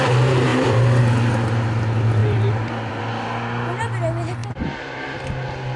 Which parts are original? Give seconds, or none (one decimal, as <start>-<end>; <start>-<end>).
0.0-0.5; 1.0-2.2; 3.0-4.4; 5.2-5.8